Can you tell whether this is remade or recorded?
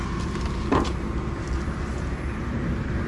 recorded